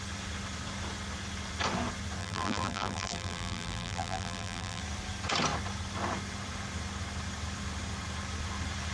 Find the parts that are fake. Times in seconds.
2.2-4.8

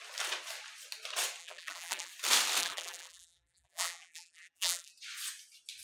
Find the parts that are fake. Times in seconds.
1.4-2.1; 2.6-4.9